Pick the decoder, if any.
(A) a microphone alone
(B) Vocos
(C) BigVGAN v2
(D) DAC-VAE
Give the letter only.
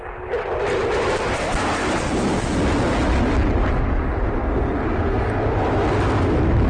A